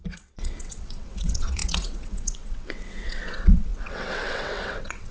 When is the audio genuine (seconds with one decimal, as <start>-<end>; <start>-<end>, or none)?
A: none